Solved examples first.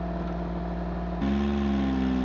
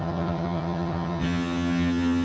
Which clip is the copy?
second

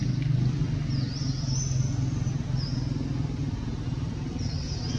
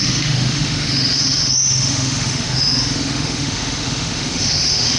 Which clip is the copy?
second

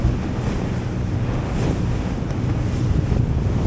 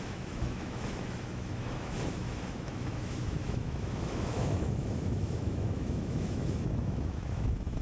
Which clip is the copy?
second